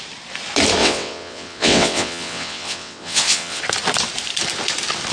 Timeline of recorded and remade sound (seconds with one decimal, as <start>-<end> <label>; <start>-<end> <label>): 0.0-0.8 recorded; 0.8-3.6 remade; 3.6-5.1 recorded